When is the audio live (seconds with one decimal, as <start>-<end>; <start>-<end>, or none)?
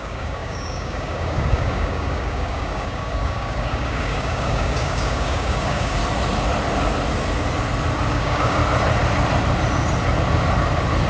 6.0-8.1; 8.6-11.1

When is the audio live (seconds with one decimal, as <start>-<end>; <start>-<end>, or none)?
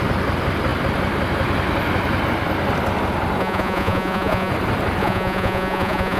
0.0-3.4; 4.5-5.0